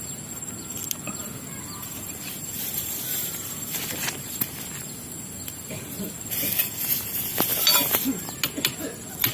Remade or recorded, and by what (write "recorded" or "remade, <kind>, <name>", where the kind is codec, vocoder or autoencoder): recorded